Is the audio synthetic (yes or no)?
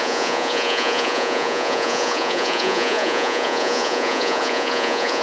yes